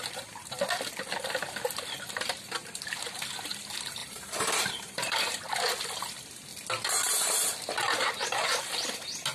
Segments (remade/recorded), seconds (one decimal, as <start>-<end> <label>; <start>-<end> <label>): 0.0-4.0 recorded; 4.0-5.4 remade; 5.4-9.3 recorded